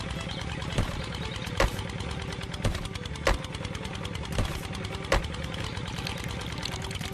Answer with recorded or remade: recorded